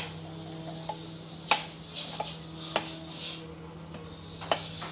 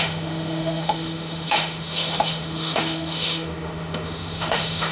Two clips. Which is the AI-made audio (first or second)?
second